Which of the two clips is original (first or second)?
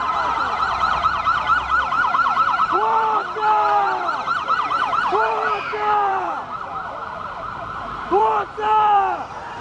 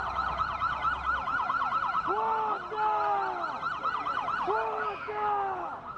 second